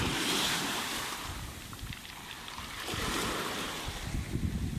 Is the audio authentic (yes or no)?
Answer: no